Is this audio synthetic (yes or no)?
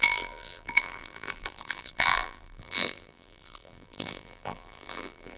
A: yes